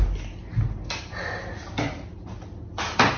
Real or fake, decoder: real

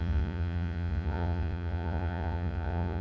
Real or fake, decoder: fake, vocoder, Vocos